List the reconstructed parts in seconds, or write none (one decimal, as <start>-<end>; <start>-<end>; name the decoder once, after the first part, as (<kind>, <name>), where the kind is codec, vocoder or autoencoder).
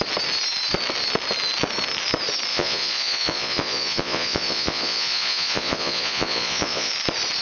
2.5-6.9 (vocoder, Vocos)